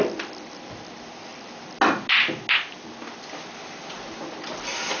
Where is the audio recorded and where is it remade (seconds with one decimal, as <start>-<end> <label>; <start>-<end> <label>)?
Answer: 0.0-5.0 recorded